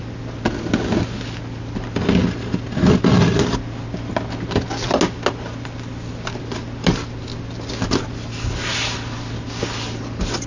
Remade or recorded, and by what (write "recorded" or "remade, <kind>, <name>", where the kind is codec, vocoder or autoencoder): recorded